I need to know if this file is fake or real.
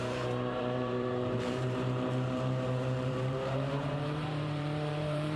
fake